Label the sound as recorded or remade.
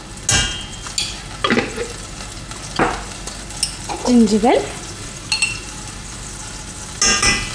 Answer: recorded